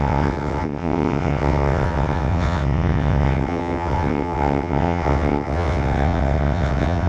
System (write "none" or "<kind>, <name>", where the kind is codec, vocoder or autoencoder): vocoder, WaveNeXt